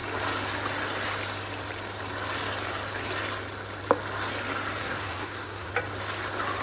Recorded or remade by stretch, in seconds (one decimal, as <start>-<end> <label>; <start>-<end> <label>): 0.0-4.8 recorded; 4.8-5.7 remade; 5.7-6.6 recorded